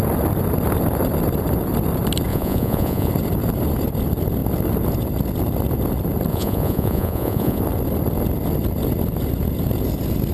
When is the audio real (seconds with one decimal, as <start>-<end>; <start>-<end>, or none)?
0.0-2.3; 3.1-6.3; 7.6-10.3